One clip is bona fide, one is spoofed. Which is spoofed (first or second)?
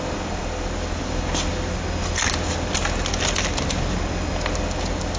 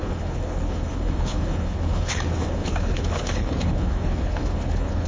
second